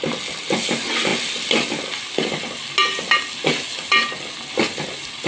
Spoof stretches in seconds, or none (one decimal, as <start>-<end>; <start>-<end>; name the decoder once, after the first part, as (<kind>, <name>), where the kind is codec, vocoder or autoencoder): none